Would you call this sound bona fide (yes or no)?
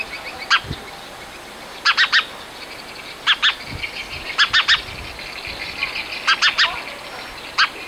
yes